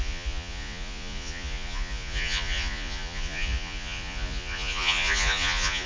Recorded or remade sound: remade